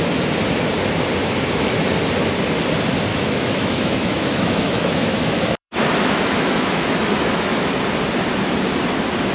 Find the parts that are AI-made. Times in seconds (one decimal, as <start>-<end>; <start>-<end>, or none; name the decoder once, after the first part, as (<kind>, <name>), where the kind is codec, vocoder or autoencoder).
1.2-1.7 (autoencoder, DAC-VAE); 3.1-7.7